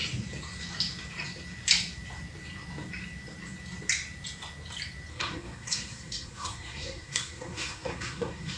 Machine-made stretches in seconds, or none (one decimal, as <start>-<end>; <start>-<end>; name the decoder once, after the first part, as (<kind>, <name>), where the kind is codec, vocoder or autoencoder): 5.1-8.6 (codec, SNAC)